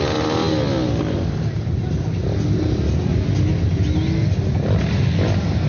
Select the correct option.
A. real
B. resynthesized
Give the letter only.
A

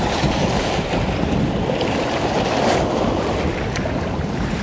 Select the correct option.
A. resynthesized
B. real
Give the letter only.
A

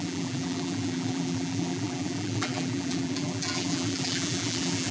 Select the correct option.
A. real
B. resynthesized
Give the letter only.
B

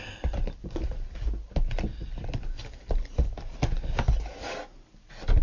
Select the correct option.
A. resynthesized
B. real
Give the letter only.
B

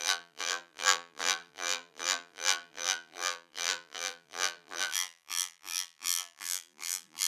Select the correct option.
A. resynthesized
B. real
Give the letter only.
A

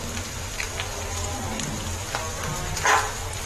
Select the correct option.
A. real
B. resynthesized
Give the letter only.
A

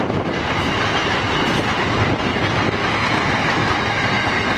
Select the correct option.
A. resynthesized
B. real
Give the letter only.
B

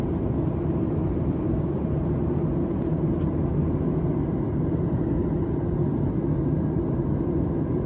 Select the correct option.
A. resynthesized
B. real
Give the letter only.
B